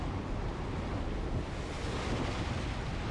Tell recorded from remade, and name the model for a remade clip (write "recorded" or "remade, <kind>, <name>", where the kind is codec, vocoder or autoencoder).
recorded